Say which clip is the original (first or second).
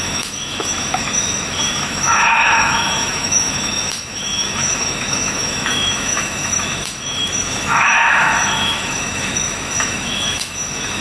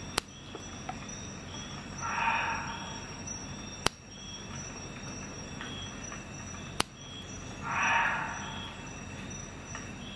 second